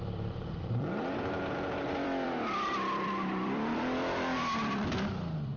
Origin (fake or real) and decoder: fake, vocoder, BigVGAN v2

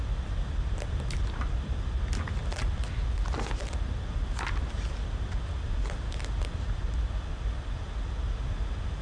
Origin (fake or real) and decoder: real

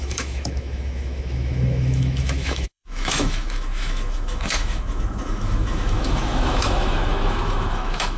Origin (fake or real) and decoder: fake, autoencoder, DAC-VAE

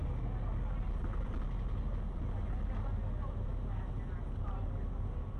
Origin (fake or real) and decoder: real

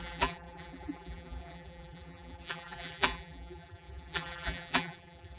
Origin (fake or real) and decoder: fake, vocoder, BigVGAN v2